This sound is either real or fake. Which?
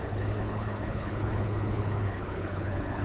fake